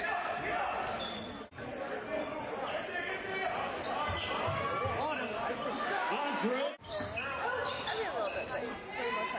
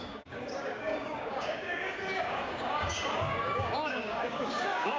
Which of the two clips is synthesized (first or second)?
second